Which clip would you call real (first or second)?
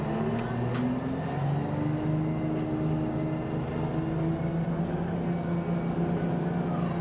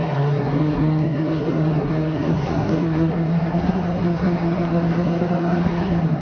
first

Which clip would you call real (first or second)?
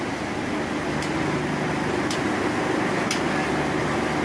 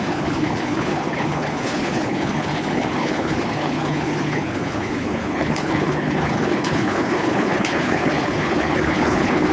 first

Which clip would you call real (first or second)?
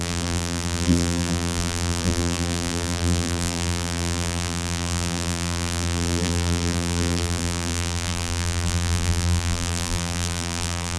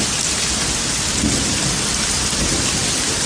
second